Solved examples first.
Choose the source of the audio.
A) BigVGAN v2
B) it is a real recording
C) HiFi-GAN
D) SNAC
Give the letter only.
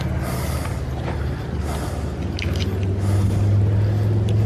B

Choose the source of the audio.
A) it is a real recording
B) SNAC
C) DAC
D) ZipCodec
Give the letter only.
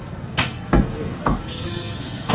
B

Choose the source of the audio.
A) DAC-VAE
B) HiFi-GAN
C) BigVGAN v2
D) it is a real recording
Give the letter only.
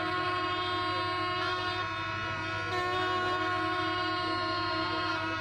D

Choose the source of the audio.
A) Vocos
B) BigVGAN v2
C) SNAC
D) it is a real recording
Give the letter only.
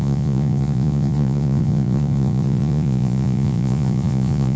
A